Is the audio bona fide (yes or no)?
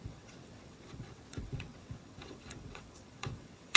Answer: no